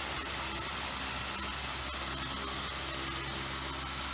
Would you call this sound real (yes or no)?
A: yes